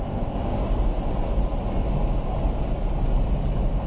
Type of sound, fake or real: real